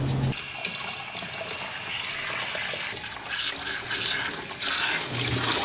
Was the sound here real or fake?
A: real